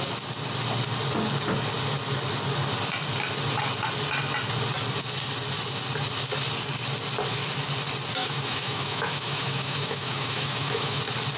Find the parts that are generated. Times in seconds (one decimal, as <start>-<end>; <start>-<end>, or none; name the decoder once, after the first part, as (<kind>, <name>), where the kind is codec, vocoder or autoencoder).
8.2-11.0 (autoencoder, DAC-VAE)